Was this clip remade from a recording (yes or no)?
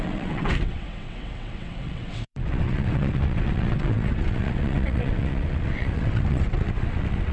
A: yes